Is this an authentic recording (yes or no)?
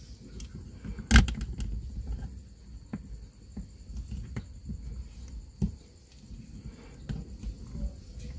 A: yes